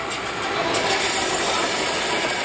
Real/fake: real